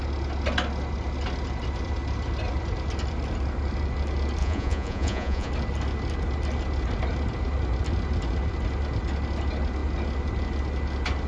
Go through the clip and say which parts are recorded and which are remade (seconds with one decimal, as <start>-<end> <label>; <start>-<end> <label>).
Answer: 0.0-4.4 recorded; 4.4-5.5 remade; 5.5-11.3 recorded